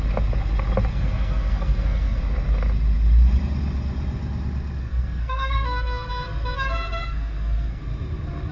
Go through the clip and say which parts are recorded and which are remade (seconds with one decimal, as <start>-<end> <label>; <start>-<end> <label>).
0.0-0.9 recorded; 0.9-2.2 remade; 2.2-4.8 recorded; 4.8-6.1 remade; 6.1-7.0 recorded; 7.0-7.8 remade; 7.8-8.5 recorded